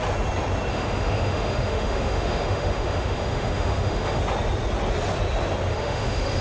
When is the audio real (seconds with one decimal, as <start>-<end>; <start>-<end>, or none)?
0.0-0.7; 4.2-5.7